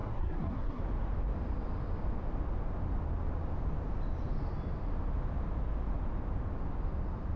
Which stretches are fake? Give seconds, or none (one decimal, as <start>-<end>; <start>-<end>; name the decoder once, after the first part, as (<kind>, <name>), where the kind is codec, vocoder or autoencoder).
0.0-0.8 (codec, SNAC)